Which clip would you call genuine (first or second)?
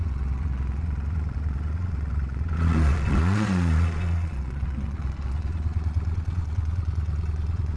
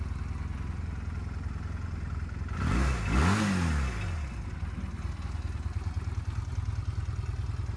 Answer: second